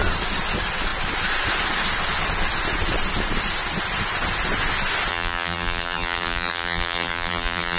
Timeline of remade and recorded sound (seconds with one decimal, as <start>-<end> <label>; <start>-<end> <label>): 0.0-5.1 recorded; 5.1-7.8 remade